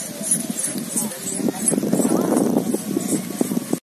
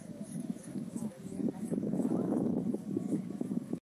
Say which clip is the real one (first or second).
first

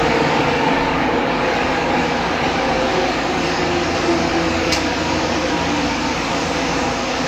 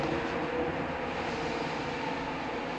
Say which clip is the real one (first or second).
second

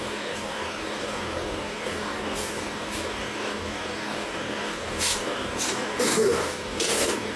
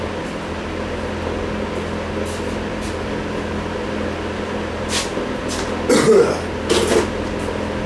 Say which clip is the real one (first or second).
second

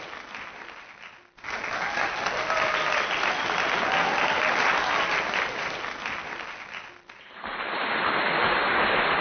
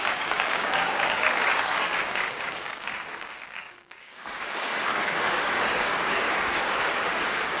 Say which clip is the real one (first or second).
first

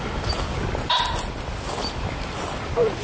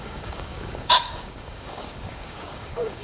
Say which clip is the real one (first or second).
first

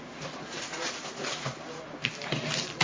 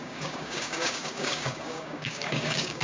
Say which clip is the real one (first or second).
first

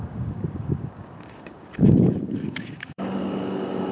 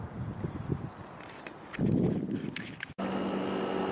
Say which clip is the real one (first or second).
second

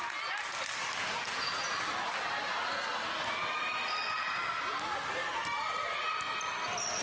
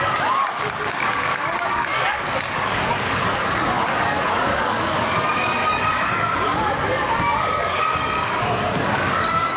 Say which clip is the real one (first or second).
first